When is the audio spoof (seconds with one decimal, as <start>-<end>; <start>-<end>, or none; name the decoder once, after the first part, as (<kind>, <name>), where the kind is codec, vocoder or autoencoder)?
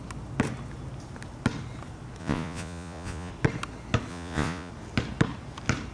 2.2-3.3 (vocoder, Vocos); 4.1-4.7